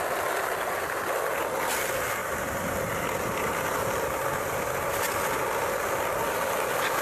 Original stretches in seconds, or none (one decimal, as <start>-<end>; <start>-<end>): 0.0-2.2; 4.6-7.0